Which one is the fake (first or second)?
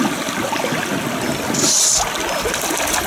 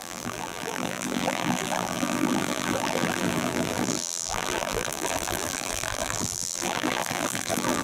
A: second